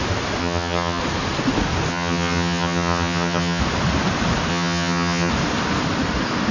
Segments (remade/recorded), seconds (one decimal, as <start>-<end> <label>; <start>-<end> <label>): 0.0-0.4 recorded; 0.4-1.0 remade; 1.0-1.9 recorded; 1.9-3.6 remade; 3.6-4.5 recorded; 4.5-5.3 remade; 5.3-6.5 recorded